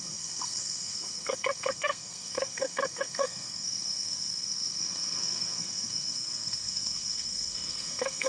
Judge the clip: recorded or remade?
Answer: remade